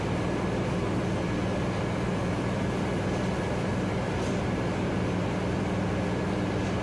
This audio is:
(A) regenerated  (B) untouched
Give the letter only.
B